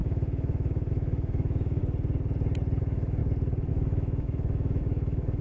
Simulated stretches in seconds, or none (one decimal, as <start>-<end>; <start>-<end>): 0.0-1.8; 2.8-3.2; 3.7-5.4